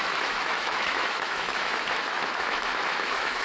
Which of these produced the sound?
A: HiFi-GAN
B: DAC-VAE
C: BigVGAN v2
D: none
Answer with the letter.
B